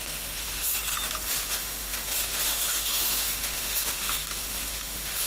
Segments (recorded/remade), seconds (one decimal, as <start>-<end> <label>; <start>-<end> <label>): 0.0-0.7 remade; 0.7-1.3 recorded; 1.3-5.3 remade